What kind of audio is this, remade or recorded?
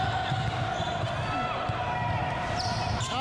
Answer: recorded